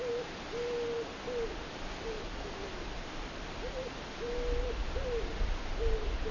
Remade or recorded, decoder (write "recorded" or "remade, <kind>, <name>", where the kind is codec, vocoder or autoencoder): recorded